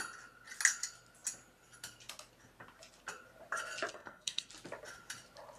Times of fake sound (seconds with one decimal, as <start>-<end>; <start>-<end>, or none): 3.9-4.5